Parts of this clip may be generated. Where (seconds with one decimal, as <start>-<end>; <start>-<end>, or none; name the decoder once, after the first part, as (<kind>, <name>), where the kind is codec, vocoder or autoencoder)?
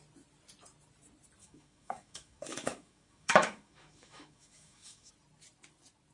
1.4-5.1 (autoencoder, DAC-VAE)